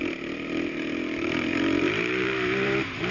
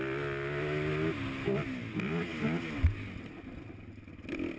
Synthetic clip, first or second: first